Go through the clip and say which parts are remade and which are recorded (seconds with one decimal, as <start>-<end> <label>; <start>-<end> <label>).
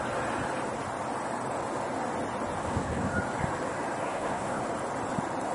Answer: 0.0-2.6 recorded; 2.6-3.1 remade; 3.1-4.0 recorded; 4.0-4.6 remade; 4.6-5.5 recorded